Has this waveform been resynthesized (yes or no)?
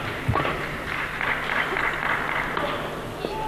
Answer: no